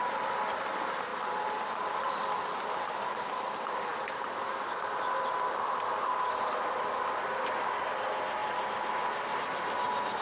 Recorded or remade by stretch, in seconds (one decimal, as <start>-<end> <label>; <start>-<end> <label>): 0.0-1.1 recorded; 1.1-3.3 remade; 3.3-3.9 recorded; 3.9-6.9 remade; 6.9-10.2 recorded